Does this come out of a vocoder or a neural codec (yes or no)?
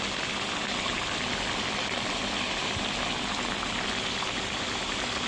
no